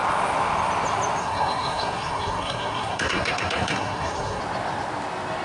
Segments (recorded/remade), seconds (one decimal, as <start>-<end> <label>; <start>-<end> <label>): 0.0-1.2 recorded; 1.2-4.4 remade; 4.4-5.4 recorded